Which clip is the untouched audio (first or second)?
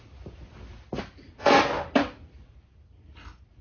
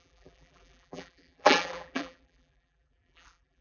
first